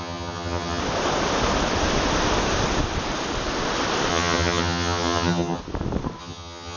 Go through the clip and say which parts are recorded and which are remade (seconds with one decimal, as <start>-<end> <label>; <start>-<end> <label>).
0.0-0.8 remade; 0.8-4.1 recorded; 4.1-5.6 remade; 5.6-6.2 recorded; 6.2-6.8 remade